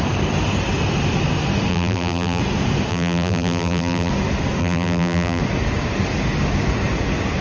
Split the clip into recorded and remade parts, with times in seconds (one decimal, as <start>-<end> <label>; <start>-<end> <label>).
0.0-1.7 recorded; 1.7-2.4 remade; 2.4-2.9 recorded; 2.9-4.1 remade; 4.1-4.6 recorded; 4.6-5.4 remade; 5.4-7.4 recorded